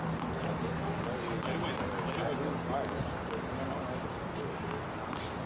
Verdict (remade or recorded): recorded